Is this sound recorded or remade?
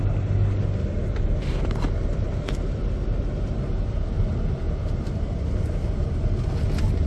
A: recorded